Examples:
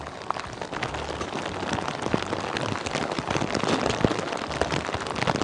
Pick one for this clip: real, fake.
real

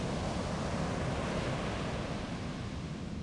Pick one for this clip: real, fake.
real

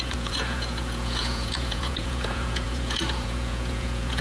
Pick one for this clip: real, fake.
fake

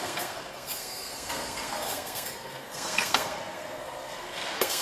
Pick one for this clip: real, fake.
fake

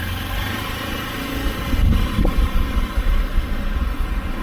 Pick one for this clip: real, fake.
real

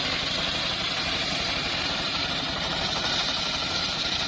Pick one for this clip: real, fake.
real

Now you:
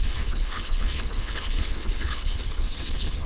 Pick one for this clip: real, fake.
fake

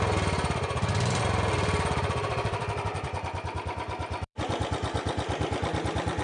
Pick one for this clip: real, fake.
fake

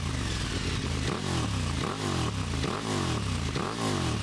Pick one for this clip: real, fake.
real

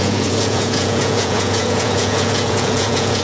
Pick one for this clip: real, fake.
fake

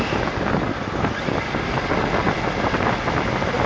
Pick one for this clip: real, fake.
real